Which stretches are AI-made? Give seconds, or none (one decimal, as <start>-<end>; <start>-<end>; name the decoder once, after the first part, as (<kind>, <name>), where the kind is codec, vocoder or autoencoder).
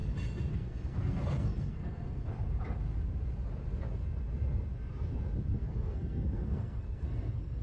0.5-2.3 (codec, SNAC); 5.5-7.6